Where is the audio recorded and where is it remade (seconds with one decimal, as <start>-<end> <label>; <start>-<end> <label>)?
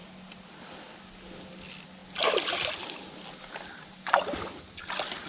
0.0-5.3 recorded